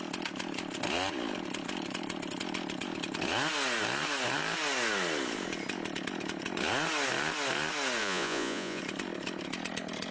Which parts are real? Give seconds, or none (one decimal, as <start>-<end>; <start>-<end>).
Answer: 0.0-8.0; 8.8-10.1